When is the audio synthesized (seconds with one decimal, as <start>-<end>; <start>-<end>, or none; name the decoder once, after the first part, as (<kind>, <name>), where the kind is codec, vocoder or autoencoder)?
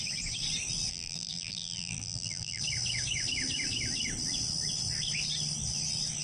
0.9-2.6 (vocoder, BigVGAN v2)